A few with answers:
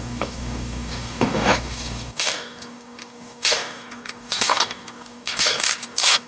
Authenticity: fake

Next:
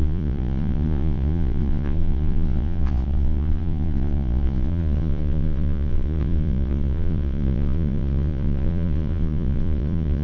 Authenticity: fake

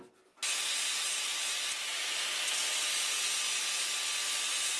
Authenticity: real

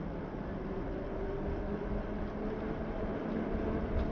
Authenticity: real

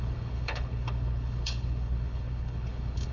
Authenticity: fake